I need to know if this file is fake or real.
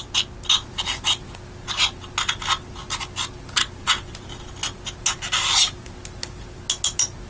real